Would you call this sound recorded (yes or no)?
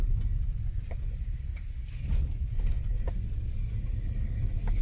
yes